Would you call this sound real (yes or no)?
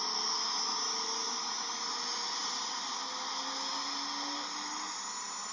yes